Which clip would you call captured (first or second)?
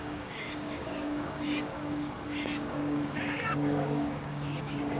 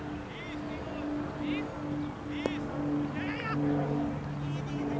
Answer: second